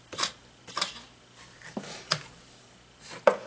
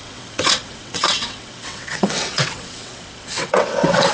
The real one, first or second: first